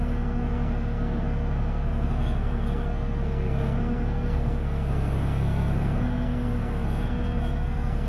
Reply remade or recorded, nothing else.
remade